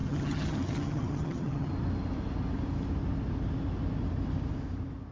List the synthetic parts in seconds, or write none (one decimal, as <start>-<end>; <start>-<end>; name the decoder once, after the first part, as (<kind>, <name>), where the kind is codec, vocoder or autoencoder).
0.0-1.7 (vocoder, HiFi-GAN)